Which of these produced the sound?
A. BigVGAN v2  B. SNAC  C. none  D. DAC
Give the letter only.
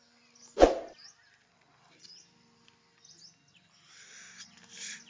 C